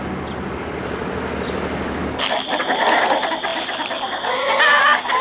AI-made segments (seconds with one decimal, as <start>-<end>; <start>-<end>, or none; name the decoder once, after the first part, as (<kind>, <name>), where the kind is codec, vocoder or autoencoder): 2.0-2.6 (vocoder, BigVGAN v2); 3.5-4.3